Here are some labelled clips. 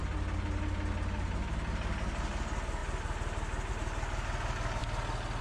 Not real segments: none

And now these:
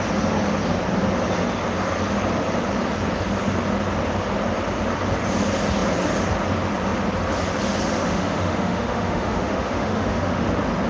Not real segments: 8.0-10.5

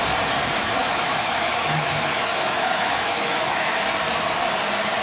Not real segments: 0.8-3.8

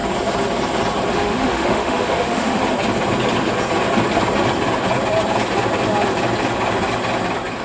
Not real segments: 1.1-2.6

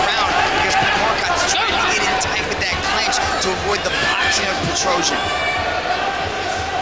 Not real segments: 3.7-5.0